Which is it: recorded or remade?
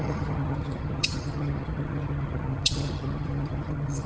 remade